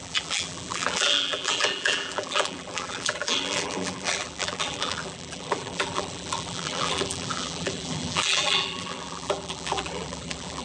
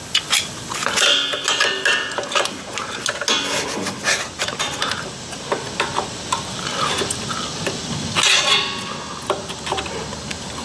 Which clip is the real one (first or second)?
second